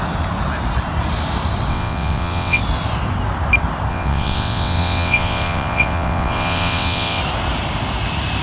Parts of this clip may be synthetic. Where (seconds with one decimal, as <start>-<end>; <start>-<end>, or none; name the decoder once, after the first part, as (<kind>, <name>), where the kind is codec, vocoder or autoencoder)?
1.7-2.6 (vocoder, WaveNeXt); 3.9-7.2